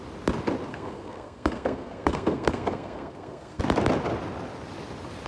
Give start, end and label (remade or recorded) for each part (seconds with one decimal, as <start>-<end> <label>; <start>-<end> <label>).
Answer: 0.0-0.7 recorded; 0.7-3.6 remade; 3.6-5.3 recorded